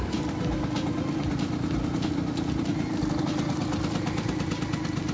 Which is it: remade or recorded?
recorded